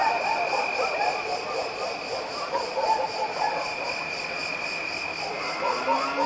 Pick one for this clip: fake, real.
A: real